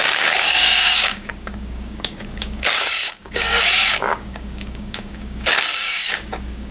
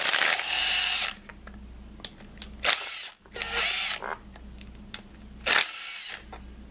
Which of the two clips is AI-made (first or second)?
first